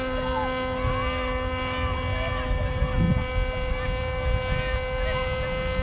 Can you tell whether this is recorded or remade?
recorded